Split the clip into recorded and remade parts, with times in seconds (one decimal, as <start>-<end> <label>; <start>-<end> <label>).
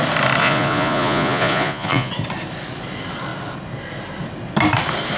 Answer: 0.0-0.4 recorded; 0.4-2.1 remade; 2.1-5.2 recorded